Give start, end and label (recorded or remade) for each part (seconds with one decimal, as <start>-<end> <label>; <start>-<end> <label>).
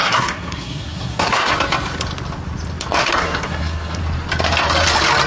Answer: 0.0-1.5 remade; 1.5-3.0 recorded; 3.0-4.0 remade; 4.0-5.3 recorded